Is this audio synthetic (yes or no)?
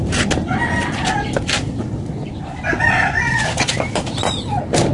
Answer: no